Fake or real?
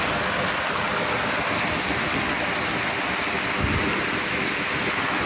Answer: real